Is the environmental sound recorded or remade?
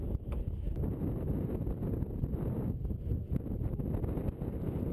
recorded